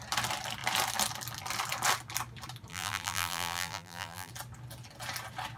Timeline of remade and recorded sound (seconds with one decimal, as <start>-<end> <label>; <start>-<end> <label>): 0.0-2.7 recorded; 2.7-4.3 remade; 4.3-5.6 recorded